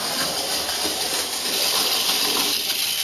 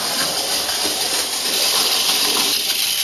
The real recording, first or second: first